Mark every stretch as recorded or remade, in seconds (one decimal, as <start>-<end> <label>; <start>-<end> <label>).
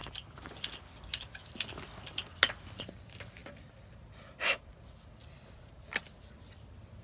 0.0-7.0 recorded